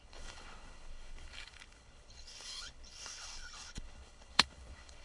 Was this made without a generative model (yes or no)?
no